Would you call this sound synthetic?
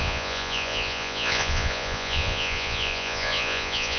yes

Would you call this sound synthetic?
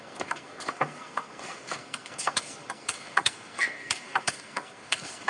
yes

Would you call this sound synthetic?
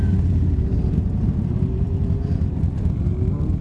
no